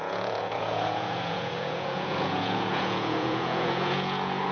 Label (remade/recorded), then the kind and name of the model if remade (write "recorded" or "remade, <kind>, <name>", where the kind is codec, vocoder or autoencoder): remade, vocoder, Vocos